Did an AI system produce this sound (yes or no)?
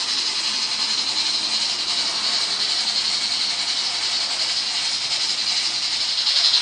no